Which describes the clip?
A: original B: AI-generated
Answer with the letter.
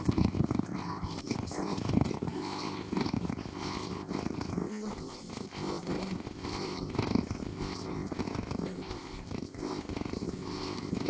B